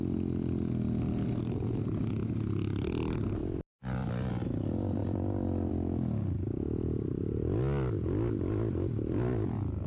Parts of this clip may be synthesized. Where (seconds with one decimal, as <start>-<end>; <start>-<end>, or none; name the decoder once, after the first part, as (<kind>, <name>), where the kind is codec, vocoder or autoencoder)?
none